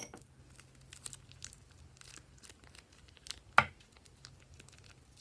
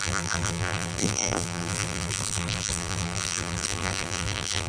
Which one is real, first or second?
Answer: first